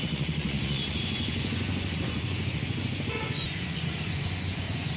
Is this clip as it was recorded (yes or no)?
no